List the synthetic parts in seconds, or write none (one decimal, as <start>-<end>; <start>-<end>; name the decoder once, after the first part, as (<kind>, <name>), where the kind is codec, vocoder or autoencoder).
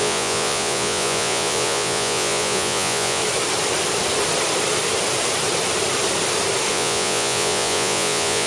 0.0-3.2 (vocoder, Vocos); 6.7-8.5